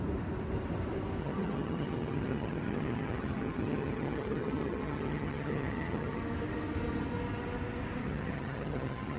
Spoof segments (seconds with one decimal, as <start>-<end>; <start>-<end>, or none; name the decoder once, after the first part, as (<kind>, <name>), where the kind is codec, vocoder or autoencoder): 1.2-6.2 (vocoder, HiFi-GAN); 8.0-9.2